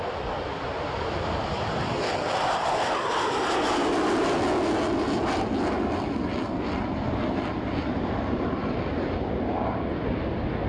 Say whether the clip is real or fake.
real